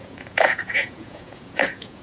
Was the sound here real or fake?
fake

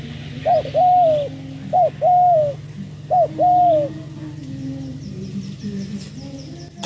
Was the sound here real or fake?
real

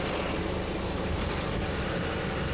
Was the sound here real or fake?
real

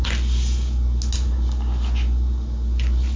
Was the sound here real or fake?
real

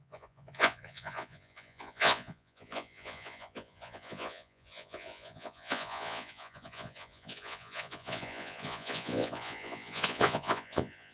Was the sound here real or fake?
fake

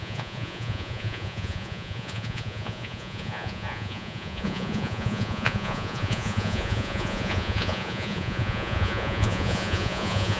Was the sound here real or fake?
fake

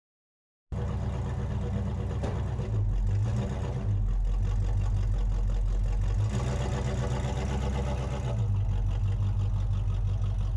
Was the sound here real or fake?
real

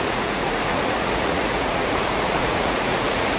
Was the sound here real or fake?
fake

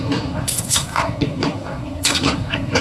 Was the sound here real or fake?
fake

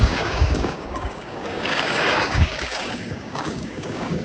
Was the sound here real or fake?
fake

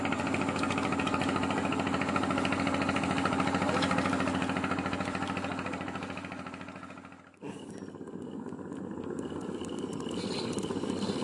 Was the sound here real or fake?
real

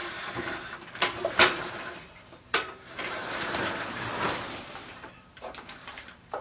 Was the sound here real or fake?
fake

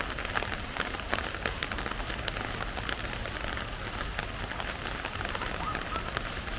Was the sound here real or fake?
real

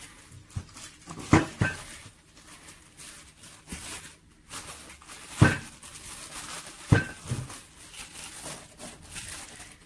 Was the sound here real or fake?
real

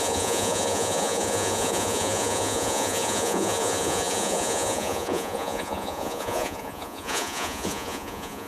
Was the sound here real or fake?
fake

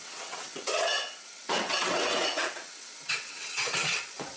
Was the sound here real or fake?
fake